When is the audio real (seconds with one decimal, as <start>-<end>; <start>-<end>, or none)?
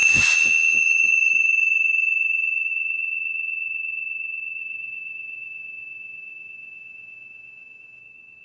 0.0-4.6; 8.0-8.4